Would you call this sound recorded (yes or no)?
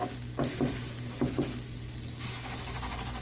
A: yes